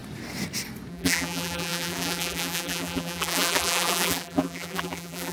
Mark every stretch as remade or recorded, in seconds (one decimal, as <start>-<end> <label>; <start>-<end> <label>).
0.0-0.9 recorded; 0.9-5.3 remade